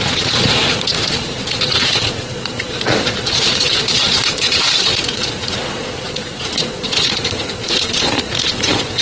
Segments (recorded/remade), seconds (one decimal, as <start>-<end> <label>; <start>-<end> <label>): 0.0-9.0 remade